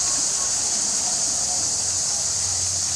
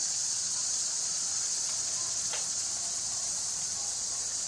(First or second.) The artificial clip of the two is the second